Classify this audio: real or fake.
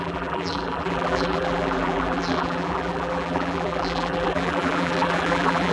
fake